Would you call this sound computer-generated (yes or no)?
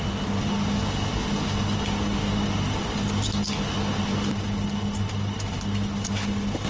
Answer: no